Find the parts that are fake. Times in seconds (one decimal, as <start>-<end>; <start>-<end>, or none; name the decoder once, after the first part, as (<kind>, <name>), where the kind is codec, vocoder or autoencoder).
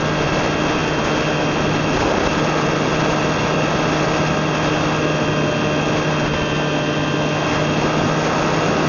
none